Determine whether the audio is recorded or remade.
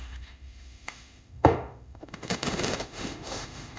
remade